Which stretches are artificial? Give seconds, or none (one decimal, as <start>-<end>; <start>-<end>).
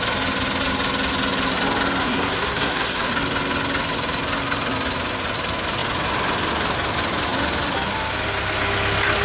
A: 2.0-3.1